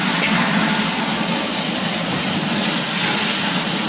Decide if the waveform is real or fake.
real